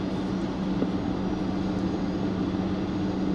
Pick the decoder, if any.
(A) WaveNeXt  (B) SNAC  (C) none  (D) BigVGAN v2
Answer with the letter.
C